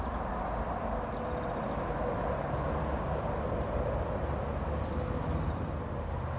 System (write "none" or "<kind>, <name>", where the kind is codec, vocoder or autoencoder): none